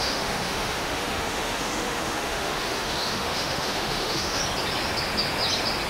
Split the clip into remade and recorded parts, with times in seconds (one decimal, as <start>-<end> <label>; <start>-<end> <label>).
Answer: 0.0-4.4 remade; 4.4-5.9 recorded